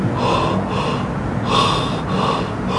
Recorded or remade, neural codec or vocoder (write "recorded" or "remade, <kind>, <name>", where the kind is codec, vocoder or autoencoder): recorded